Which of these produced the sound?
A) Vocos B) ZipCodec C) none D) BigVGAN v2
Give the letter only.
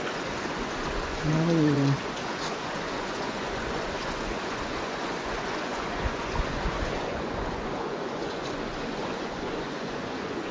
A